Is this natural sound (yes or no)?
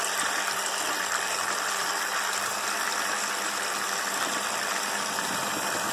no